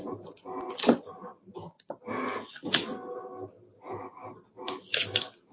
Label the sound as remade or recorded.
recorded